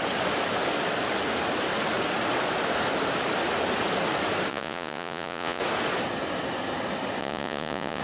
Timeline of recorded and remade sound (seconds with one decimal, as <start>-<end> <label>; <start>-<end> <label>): 0.0-4.5 recorded; 4.5-5.6 remade; 5.6-7.2 recorded; 7.2-8.0 remade